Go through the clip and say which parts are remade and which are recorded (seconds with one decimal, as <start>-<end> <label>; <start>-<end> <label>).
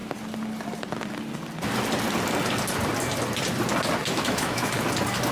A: 0.0-4.0 recorded; 4.0-4.7 remade; 4.7-5.3 recorded